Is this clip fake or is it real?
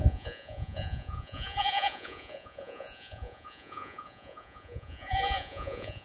fake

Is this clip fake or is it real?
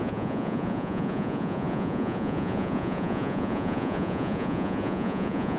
fake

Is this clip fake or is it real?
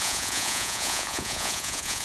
fake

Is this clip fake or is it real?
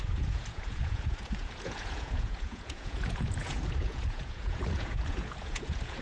fake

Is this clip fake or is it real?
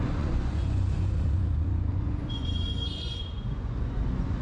fake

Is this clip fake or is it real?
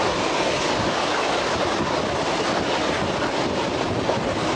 real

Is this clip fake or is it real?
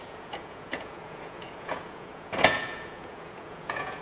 fake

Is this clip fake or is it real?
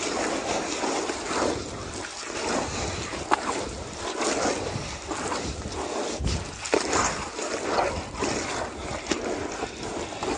real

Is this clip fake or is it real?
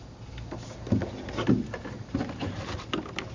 real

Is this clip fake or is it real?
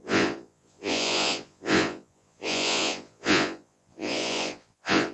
fake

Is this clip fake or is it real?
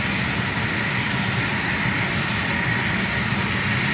real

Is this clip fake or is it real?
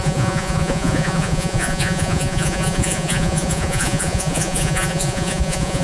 fake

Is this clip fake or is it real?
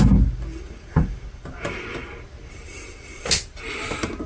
real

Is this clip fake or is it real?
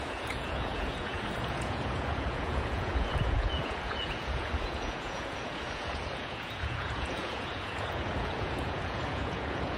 fake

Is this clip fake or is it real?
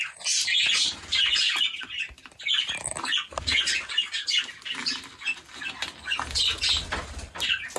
real